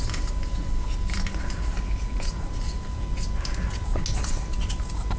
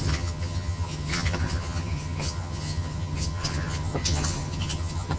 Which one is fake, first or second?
second